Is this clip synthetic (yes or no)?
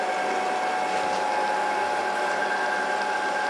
no